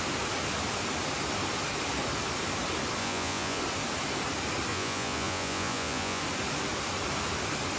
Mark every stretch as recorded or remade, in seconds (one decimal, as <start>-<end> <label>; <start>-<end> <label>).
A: 0.0-3.0 recorded; 3.0-3.6 remade; 3.6-4.7 recorded; 4.7-6.2 remade; 6.2-7.8 recorded